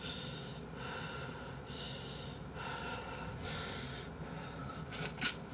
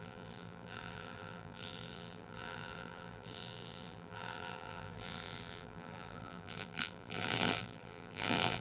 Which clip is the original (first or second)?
first